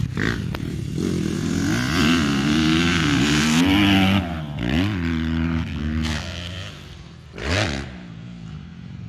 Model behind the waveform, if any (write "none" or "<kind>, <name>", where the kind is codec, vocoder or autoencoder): none